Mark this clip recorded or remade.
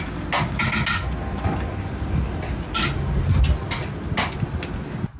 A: recorded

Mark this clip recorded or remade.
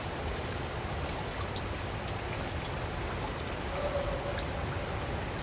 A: recorded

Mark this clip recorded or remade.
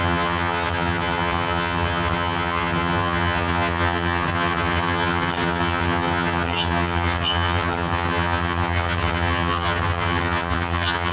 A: remade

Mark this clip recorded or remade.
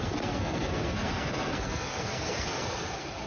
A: remade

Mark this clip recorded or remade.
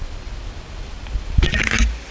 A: recorded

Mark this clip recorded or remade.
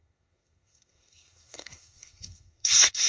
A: remade